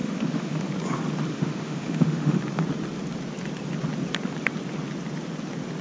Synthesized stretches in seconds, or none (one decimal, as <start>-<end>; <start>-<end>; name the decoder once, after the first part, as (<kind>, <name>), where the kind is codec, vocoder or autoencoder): 0.0-0.7 (autoencoder, DAC-VAE); 1.3-2.4